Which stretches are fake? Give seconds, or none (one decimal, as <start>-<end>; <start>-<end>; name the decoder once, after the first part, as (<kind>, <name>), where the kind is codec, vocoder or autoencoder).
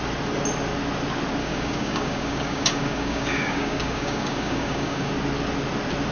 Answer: 1.4-5.1 (codec, DAC)